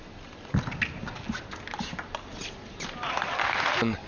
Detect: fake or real real